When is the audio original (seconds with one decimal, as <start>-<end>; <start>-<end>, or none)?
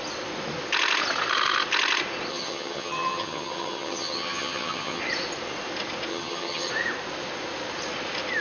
0.0-2.3; 5.0-6.1; 6.7-8.4